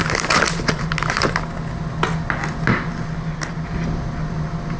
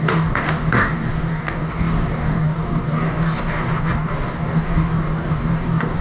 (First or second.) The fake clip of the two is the second